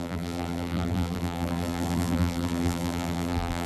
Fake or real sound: fake